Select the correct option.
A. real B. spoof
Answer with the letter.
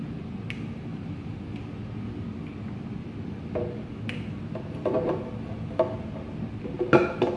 A